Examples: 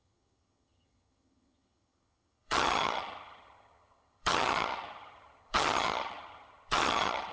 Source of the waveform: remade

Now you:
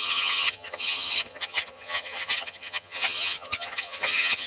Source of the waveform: remade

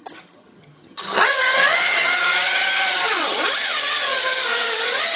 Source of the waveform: remade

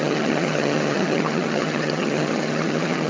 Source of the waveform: remade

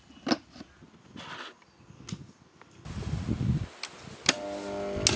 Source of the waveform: recorded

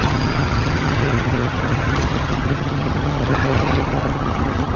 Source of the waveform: remade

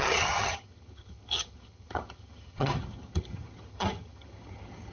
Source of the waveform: remade